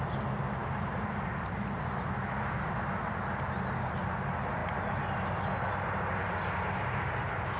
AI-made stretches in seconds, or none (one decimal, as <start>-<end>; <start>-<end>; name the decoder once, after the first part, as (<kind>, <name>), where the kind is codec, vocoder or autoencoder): none